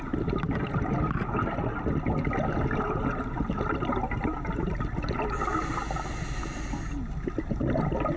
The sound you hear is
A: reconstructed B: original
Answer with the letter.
B